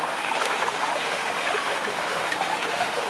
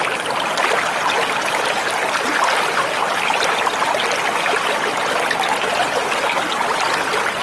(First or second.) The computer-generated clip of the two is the first